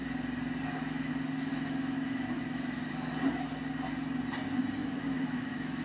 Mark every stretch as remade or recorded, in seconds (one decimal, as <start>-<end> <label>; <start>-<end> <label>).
0.0-1.5 recorded; 1.5-2.9 remade; 2.9-4.8 recorded; 4.8-5.8 remade